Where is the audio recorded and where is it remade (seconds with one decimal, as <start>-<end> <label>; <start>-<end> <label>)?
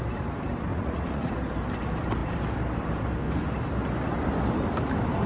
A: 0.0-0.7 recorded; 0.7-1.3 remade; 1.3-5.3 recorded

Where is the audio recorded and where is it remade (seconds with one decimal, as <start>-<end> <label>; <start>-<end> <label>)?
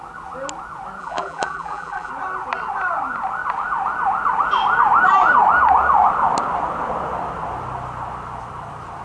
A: 0.0-1.0 recorded; 1.0-2.1 remade; 2.1-9.0 recorded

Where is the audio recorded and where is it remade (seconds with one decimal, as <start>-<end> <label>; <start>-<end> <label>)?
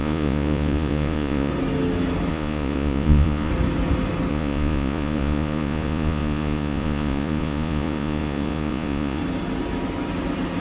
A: 0.0-1.5 remade; 1.5-2.3 recorded; 2.3-3.5 remade; 3.5-4.3 recorded; 4.3-9.2 remade; 9.2-10.6 recorded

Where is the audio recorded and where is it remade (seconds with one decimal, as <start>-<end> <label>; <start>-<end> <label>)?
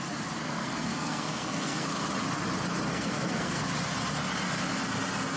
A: 0.0-0.4 recorded; 0.4-2.1 remade; 2.1-2.9 recorded; 2.9-3.6 remade; 3.6-5.4 recorded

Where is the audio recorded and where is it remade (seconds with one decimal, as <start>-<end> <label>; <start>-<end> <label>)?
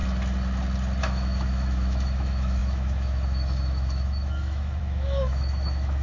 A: 0.0-1.0 recorded; 1.0-6.0 remade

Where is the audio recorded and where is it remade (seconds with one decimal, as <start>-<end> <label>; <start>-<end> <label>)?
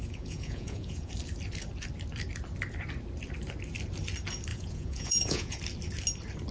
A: 0.0-1.1 remade; 1.1-4.5 recorded; 4.5-5.6 remade; 5.6-6.5 recorded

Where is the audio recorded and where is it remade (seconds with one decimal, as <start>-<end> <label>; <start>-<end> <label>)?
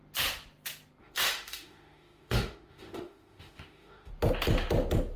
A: 0.0-1.0 recorded; 1.0-4.1 remade; 4.1-5.2 recorded